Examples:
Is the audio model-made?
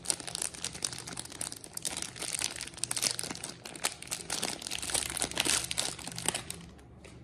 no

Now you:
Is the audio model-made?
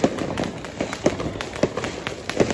no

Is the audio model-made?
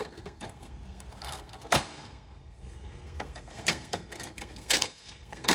yes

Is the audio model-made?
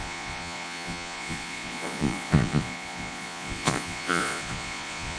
yes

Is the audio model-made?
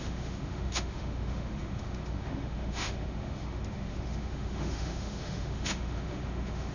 yes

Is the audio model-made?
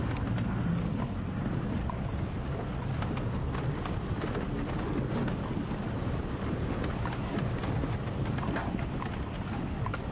no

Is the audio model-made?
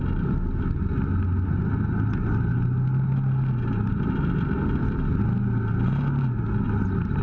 no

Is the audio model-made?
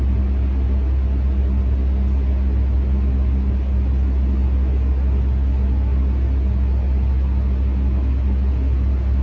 no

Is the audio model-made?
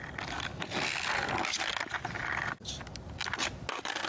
no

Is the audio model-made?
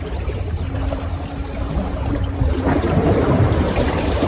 yes